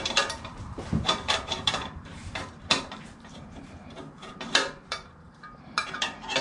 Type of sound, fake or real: fake